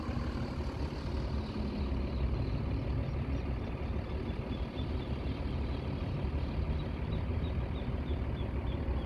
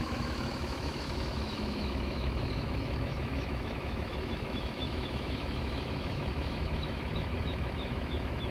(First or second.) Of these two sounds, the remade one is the second